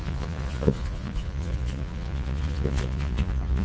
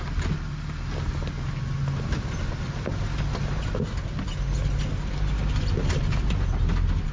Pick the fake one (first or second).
first